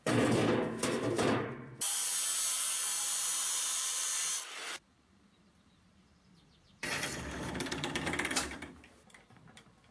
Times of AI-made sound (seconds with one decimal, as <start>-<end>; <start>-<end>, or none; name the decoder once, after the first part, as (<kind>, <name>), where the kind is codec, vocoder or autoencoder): 0.0-0.4 (vocoder, BigVGAN v2); 1.0-9.9